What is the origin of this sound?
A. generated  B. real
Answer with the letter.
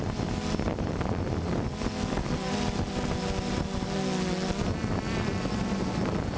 B